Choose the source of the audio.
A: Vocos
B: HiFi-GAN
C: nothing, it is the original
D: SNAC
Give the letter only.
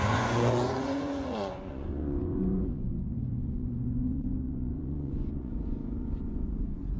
A